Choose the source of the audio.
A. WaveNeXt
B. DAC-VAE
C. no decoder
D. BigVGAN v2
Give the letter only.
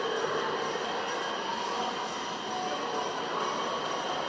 C